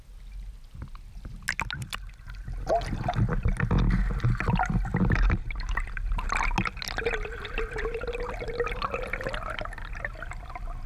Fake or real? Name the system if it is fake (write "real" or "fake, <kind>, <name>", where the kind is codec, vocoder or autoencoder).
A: real